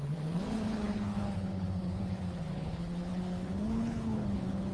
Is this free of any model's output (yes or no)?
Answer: no